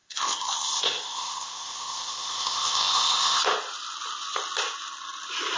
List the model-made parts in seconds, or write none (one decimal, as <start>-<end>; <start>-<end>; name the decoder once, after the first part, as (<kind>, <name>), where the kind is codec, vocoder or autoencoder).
0.0-3.4 (codec, ZipCodec)